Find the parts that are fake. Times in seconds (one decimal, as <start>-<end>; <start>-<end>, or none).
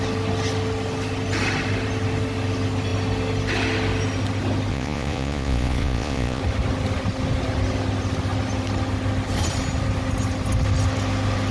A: 4.7-6.4